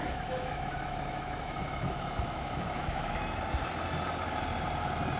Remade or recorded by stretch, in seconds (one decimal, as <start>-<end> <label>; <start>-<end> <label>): 0.0-3.1 remade; 3.1-5.2 recorded